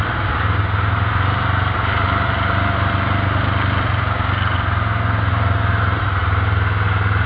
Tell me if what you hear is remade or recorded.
recorded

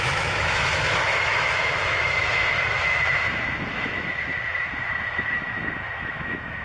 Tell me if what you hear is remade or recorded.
remade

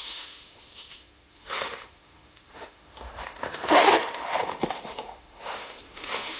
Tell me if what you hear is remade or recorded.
remade